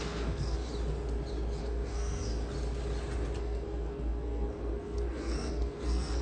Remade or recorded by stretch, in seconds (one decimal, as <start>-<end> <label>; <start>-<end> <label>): 0.0-0.7 remade; 0.7-1.6 recorded; 1.6-2.3 remade; 2.3-3.4 recorded; 3.4-6.2 remade